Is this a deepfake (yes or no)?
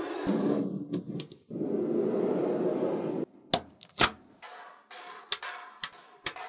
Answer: no